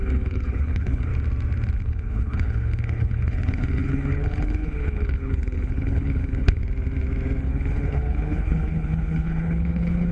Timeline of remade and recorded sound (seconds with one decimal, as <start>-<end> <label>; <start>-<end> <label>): 0.0-1.1 remade; 1.1-1.8 recorded; 1.8-6.6 remade; 6.6-7.4 recorded; 7.4-10.1 remade